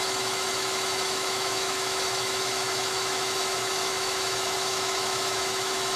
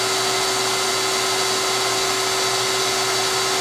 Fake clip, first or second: first